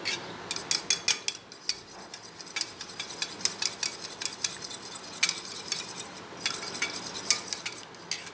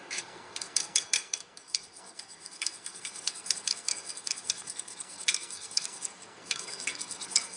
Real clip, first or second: first